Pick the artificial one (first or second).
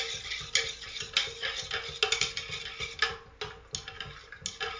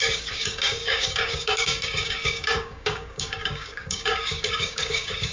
second